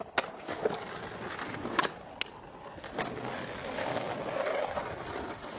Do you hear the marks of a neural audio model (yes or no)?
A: no